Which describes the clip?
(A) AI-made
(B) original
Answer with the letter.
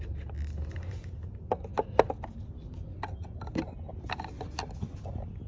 B